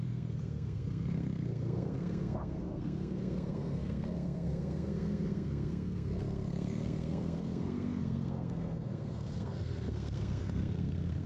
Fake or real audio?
fake